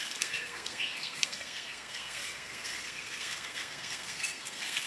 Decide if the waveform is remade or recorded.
remade